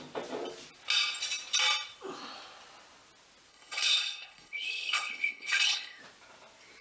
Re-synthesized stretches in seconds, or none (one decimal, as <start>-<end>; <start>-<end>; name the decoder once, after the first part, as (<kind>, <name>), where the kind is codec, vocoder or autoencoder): 3.5-6.0 (codec, HILCodec)